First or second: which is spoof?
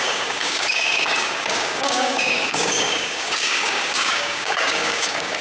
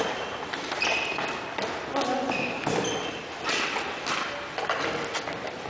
first